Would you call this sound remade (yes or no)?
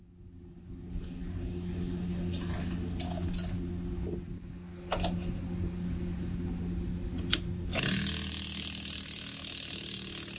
no